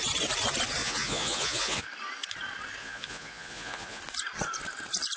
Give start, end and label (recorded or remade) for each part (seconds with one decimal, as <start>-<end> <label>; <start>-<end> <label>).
0.0-0.8 recorded; 0.8-1.8 remade; 1.8-2.8 recorded; 2.8-4.0 remade; 4.0-5.2 recorded